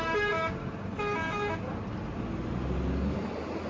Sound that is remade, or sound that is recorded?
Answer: recorded